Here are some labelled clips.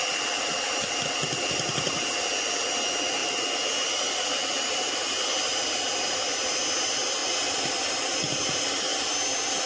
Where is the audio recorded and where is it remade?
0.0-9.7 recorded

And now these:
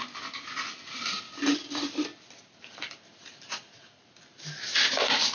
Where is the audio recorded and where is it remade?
0.0-5.3 recorded

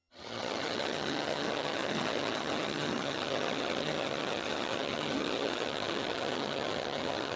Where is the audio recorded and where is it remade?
0.0-7.4 remade

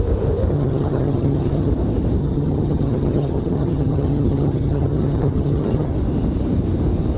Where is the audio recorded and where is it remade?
0.0-0.5 recorded; 0.5-1.7 remade; 1.7-2.2 recorded; 2.2-5.9 remade; 5.9-7.2 recorded